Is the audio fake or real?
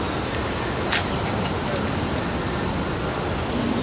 real